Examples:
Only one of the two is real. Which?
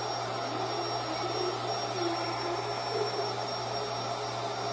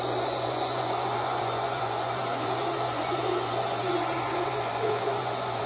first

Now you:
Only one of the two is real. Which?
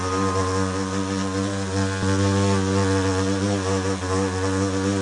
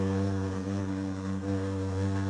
first